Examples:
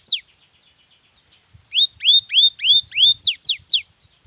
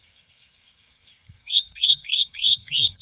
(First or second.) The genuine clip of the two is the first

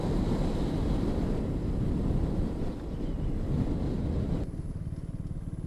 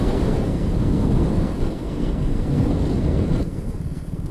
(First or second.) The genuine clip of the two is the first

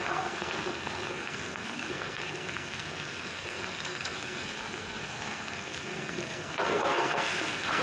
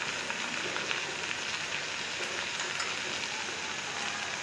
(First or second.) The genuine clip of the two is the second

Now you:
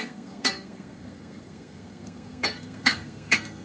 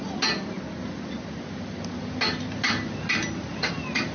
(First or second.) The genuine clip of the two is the second